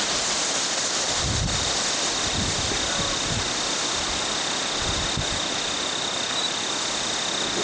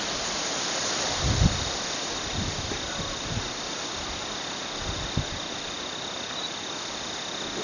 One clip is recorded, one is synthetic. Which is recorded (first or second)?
first